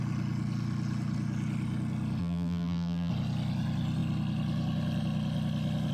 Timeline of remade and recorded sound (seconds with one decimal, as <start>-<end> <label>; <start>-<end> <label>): 0.0-2.2 recorded; 2.2-3.1 remade; 3.1-5.9 recorded